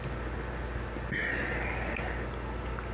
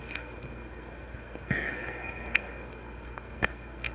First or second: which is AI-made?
second